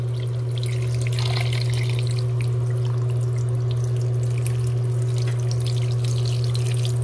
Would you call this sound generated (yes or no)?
no